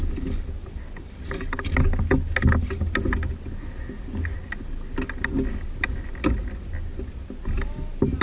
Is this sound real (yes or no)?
yes